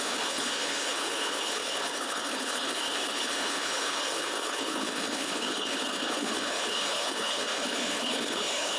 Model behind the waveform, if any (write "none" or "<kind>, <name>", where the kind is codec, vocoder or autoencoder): codec, HILCodec